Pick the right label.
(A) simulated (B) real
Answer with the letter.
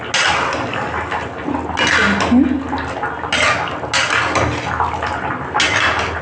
B